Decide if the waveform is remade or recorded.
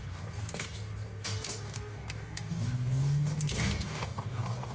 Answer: remade